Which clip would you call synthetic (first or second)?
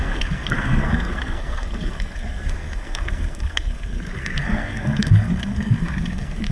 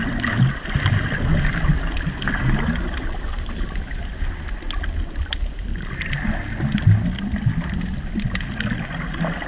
first